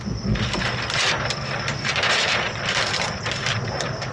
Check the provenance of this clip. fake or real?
real